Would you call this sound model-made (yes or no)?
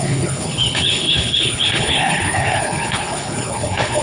yes